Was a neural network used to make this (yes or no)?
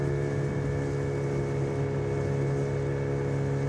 no